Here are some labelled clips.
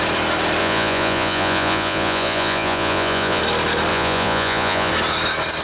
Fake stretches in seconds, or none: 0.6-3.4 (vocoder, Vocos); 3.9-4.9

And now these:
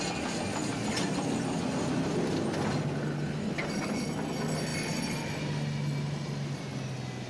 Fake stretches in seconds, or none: none

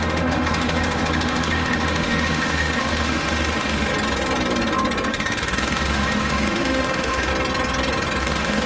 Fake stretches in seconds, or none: 0.0-3.9 (autoencoder, DAC-VAE); 5.1-7.3; 8.2-8.7

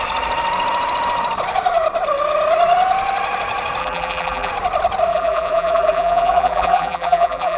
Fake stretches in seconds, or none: 3.8-4.5 (vocoder, BigVGAN v2); 5.1-7.6